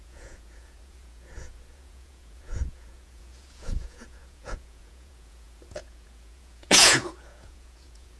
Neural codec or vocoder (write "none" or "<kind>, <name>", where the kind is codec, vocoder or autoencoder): vocoder, Vocos